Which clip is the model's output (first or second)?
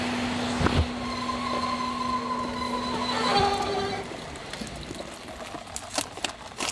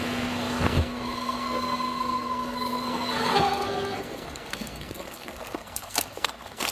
second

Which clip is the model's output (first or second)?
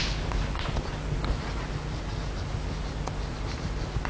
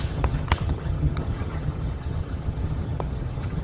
second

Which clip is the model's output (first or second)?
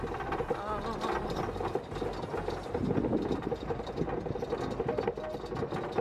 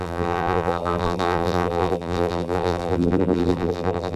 second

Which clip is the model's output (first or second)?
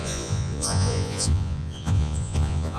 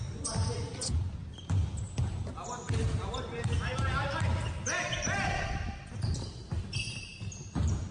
first